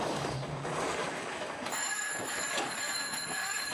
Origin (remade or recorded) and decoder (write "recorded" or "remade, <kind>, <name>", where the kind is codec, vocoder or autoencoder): remade, codec, DAC